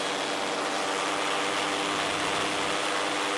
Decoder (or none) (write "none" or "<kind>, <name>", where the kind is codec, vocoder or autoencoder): none